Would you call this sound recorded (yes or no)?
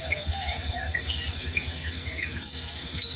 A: no